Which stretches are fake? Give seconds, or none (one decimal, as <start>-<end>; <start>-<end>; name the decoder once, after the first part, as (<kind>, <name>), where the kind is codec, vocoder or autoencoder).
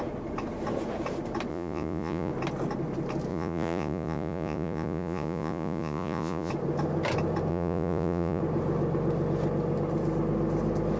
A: 1.5-2.3 (vocoder, Vocos); 3.3-6.5; 7.5-8.4